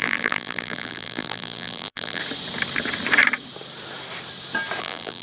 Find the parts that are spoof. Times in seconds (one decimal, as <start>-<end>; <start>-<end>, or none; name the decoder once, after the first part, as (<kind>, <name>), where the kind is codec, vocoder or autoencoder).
0.0-2.2 (vocoder, BigVGAN v2); 4.8-5.2